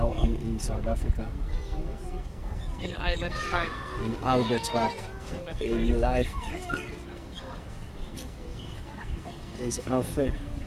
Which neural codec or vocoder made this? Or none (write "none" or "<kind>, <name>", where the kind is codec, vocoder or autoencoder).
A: codec, SNAC